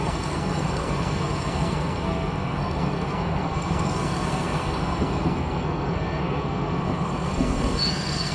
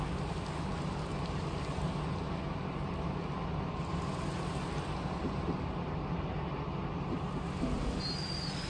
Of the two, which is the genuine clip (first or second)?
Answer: second